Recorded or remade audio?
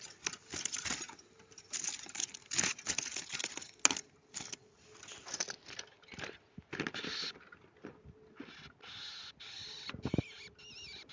recorded